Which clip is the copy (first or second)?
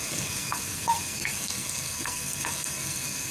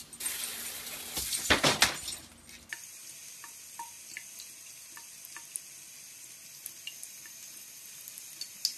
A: first